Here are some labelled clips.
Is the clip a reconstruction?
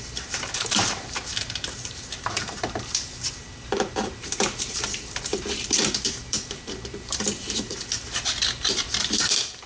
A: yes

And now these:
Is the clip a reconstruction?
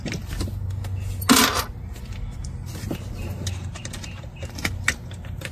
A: no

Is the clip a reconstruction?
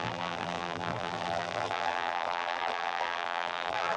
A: yes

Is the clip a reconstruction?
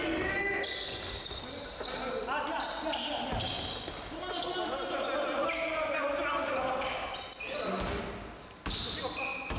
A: no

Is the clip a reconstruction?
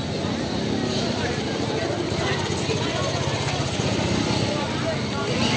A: no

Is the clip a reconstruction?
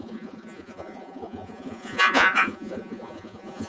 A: yes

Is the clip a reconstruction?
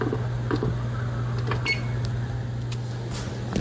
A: no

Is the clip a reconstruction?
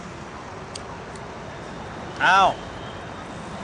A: no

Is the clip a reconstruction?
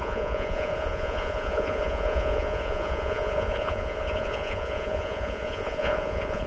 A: yes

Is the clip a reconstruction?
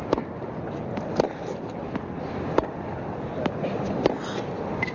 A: no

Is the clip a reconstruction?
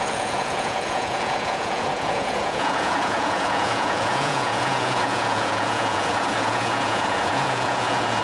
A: yes